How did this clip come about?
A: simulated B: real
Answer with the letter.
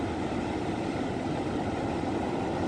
B